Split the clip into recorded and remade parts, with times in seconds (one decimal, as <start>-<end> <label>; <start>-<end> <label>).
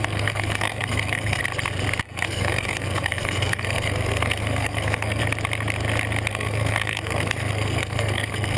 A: 0.0-1.4 remade; 1.4-2.0 recorded; 2.0-5.2 remade; 5.2-6.3 recorded; 6.3-8.6 remade